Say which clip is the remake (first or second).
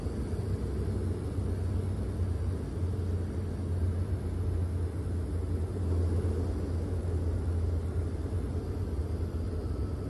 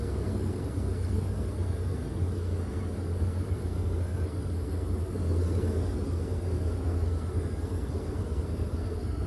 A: second